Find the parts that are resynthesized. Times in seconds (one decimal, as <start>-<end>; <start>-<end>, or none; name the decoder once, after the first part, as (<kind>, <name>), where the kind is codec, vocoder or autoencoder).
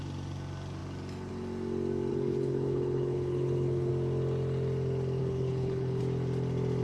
2.1-3.9 (codec, HILCodec); 5.2-6.0